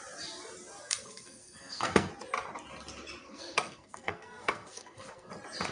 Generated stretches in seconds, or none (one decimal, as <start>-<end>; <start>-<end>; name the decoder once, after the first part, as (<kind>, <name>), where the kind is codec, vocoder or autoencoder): 0.8-2.1 (codec, SNAC); 3.2-5.3